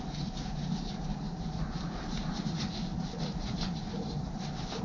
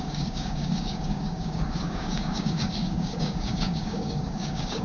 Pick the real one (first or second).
first